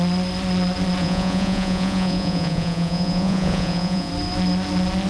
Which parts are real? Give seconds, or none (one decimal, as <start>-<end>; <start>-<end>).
0.0-1.0; 4.1-5.1